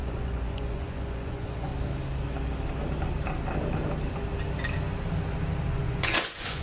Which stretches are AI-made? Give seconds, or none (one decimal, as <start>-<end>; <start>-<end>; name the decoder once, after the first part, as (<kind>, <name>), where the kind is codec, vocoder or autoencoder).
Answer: 0.0-1.7 (vocoder, Vocos); 5.7-6.6